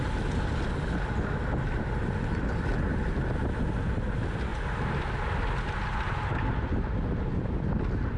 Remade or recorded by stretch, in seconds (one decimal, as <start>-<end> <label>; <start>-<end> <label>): 0.0-8.2 recorded